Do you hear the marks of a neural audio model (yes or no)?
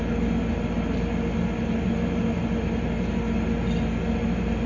no